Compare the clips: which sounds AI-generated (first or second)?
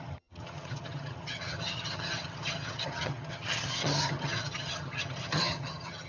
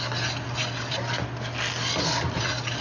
first